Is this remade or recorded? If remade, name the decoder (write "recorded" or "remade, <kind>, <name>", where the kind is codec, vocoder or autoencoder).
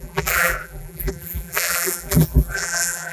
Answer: remade, vocoder, BigVGAN v2